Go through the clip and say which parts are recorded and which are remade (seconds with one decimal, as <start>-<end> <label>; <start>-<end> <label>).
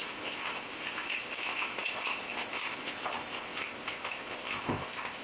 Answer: 0.0-5.2 remade